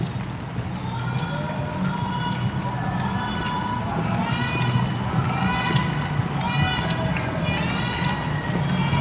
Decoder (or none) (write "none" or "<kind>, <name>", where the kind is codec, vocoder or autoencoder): none